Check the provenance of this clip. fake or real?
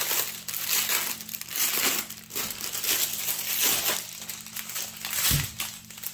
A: real